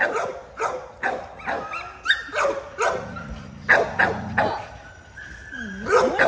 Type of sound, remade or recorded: recorded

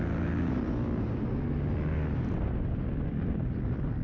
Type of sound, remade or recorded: recorded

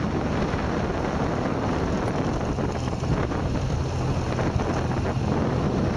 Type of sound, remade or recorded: recorded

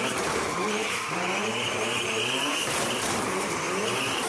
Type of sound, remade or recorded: remade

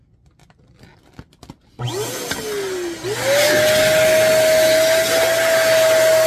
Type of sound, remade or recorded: recorded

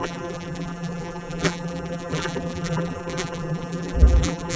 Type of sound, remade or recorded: remade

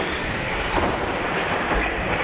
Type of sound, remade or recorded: remade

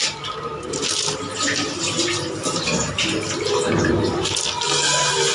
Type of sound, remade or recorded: recorded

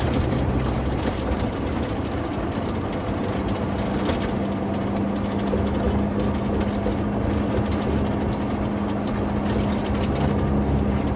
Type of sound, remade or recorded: recorded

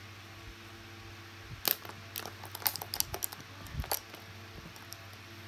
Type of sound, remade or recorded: recorded